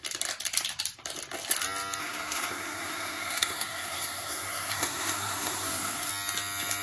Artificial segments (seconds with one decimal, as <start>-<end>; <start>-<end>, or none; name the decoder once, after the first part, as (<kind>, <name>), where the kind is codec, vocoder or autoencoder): 2.0-6.1 (codec, SNAC)